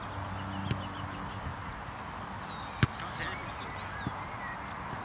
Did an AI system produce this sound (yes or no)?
no